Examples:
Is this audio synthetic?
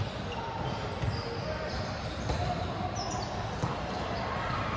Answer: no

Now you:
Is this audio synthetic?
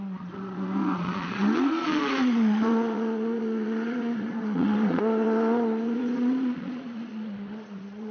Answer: yes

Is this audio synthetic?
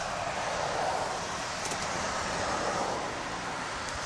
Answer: no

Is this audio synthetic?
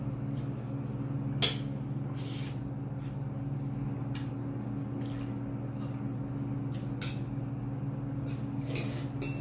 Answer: no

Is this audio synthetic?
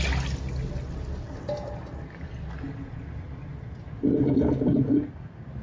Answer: no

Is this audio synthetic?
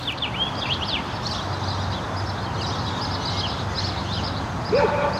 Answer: no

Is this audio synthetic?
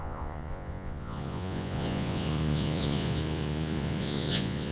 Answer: yes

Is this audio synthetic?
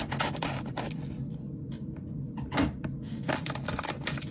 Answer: no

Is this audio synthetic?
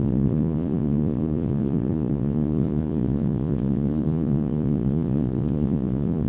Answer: yes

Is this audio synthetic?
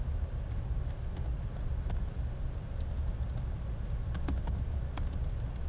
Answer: no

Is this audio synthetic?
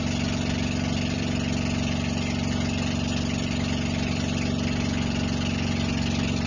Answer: no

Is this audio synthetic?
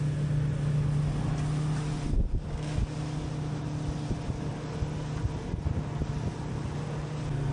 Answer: no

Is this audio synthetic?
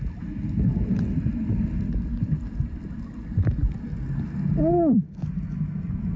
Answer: no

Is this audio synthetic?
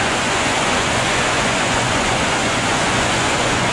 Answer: yes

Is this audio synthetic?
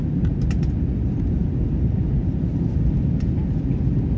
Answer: no